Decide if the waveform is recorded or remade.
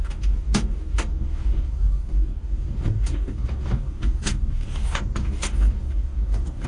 remade